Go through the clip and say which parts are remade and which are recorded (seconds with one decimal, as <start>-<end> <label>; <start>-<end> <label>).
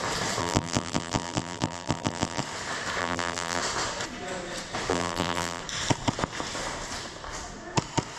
0.0-0.4 recorded; 0.4-2.4 remade; 2.4-3.0 recorded; 3.0-3.6 remade; 3.6-4.9 recorded; 4.9-5.6 remade; 5.6-8.2 recorded